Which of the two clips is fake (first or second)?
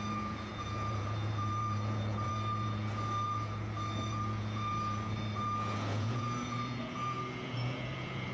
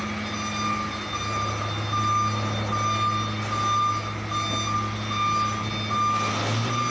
first